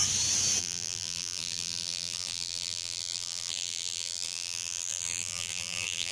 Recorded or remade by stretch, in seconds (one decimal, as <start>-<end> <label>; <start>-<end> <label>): 0.0-0.6 recorded; 0.6-6.1 remade